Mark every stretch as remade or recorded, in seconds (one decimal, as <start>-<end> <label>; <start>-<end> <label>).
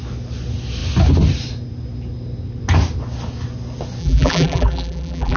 0.0-4.0 recorded; 4.0-5.4 remade